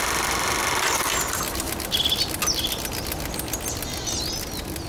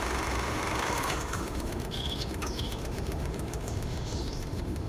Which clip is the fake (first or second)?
second